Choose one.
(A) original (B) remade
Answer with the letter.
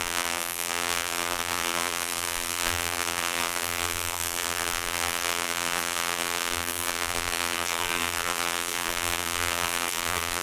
B